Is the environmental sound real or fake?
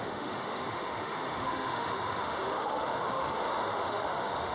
fake